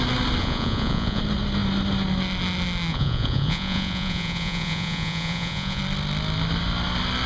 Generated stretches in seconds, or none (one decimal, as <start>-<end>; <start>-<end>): 0.4-1.2; 2.9-5.8